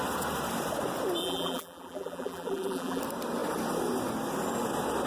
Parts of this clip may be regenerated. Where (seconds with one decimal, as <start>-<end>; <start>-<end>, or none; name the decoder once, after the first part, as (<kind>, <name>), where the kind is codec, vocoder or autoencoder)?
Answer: 1.2-3.0 (vocoder, BigVGAN v2)

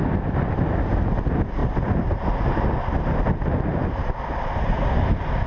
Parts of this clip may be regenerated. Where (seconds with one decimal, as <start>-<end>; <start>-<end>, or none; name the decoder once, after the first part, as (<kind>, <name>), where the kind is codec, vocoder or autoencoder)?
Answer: none

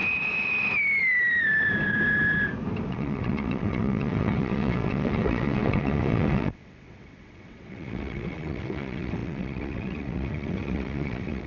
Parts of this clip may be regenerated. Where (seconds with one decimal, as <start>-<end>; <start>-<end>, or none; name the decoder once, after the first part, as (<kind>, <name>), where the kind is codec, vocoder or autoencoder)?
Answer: 2.9-11.5 (vocoder, WaveNeXt)

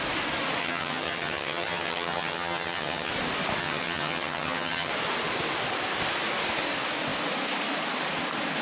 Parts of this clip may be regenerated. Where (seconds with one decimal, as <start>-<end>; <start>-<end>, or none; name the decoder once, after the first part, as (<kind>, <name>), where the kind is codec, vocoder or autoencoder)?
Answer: 0.6-3.1 (vocoder, HiFi-GAN); 3.6-4.9

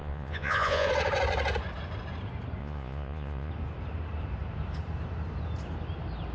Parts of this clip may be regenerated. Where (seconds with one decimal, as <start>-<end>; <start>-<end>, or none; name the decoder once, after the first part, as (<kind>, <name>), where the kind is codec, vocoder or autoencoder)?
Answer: 0.0-0.9 (vocoder, Vocos); 2.6-3.5

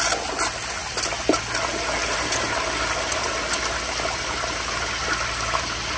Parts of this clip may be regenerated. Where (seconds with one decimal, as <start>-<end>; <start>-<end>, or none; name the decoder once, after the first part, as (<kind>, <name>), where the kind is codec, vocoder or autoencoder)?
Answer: none

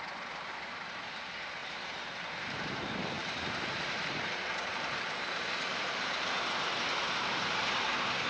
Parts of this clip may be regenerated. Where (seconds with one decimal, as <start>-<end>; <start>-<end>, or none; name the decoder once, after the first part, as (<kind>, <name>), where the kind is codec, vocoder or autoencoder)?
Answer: 1.6-6.3 (vocoder, BigVGAN v2); 7.0-7.6